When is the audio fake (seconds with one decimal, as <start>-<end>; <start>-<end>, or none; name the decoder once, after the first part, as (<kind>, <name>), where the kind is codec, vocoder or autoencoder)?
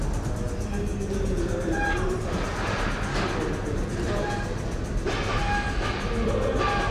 0.9-2.2 (vocoder, BigVGAN v2)